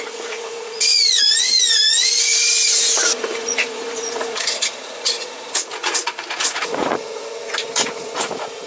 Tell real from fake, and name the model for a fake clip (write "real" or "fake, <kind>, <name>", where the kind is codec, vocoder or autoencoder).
fake, vocoder, Vocos